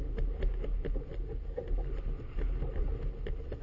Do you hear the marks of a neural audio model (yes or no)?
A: no